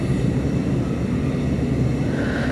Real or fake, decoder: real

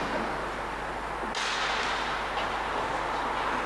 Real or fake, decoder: real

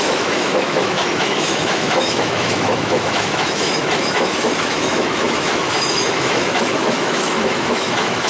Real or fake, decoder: fake, autoencoder, DAC-VAE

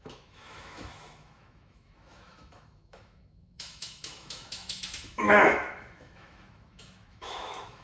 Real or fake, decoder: fake, autoencoder, DAC-VAE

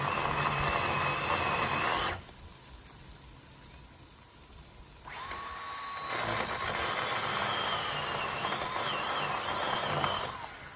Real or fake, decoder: real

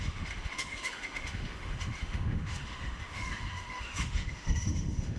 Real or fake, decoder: fake, autoencoder, DAC-VAE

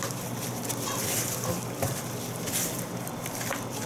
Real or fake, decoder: real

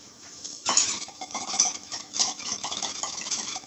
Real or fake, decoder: fake, autoencoder, DAC-VAE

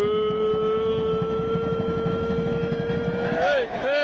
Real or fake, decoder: fake, autoencoder, DAC-VAE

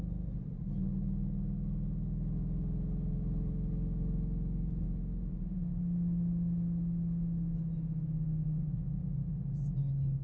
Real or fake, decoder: real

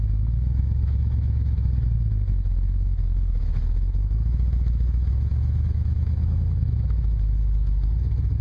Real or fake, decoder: fake, autoencoder, DAC-VAE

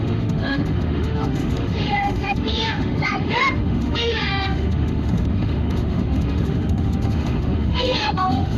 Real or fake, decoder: fake, autoencoder, DAC-VAE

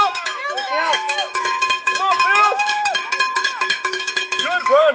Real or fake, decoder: fake, autoencoder, DAC-VAE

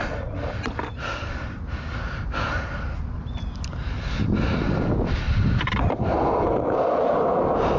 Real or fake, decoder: real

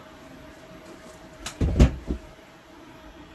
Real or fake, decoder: real